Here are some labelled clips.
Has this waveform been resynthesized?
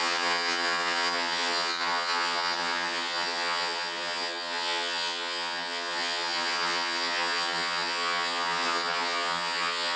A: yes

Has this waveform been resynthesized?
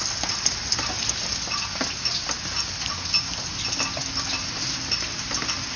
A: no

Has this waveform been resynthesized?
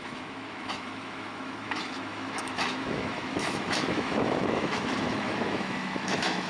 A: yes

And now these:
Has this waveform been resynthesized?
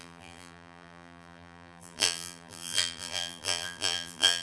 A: yes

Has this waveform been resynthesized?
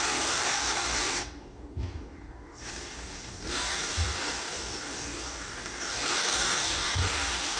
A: yes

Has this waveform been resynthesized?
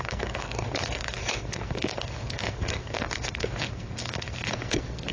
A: yes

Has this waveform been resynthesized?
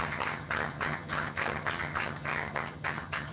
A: yes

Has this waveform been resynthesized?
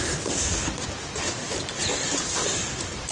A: no